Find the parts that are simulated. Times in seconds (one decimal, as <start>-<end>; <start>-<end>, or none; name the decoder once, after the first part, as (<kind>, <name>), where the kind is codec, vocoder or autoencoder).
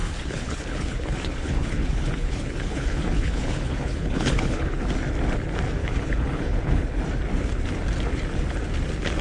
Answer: 0.0-4.8 (codec, HILCodec); 5.8-7.0